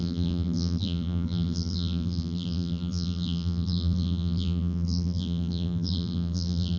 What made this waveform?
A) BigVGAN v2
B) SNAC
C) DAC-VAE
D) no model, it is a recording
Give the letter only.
A